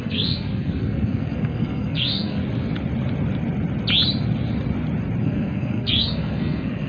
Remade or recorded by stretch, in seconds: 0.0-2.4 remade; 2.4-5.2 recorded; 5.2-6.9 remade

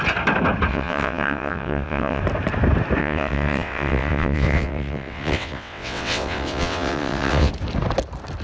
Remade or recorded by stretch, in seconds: 0.0-0.7 recorded; 0.7-2.2 remade; 2.2-3.0 recorded; 3.0-7.5 remade; 7.5-8.4 recorded

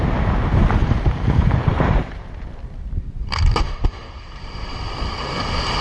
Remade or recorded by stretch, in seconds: 0.0-0.8 recorded; 0.8-2.5 remade; 2.5-3.2 recorded; 3.2-5.3 remade; 5.3-5.8 recorded

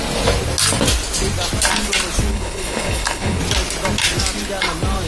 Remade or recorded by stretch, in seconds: 0.0-2.3 recorded; 2.3-3.4 remade; 3.4-5.1 recorded

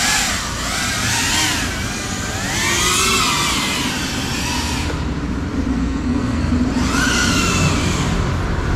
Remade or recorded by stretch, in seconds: 0.0-5.7 recorded; 5.7-6.5 remade; 6.5-8.8 recorded

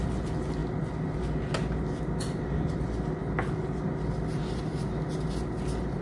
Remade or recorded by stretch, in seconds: 0.0-6.0 recorded